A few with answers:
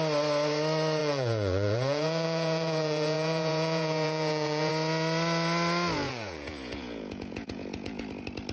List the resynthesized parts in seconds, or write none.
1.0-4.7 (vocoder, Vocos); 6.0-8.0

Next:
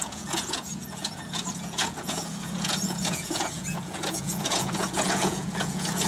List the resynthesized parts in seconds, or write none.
0.0-6.1 (vocoder, Vocos)

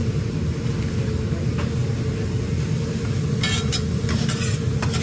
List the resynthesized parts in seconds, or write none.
none

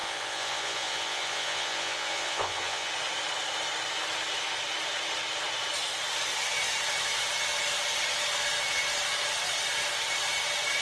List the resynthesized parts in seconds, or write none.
0.0-2.9 (vocoder, Vocos)

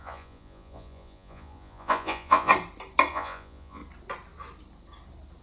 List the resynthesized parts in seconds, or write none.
0.0-2.5 (vocoder, Vocos); 3.1-3.8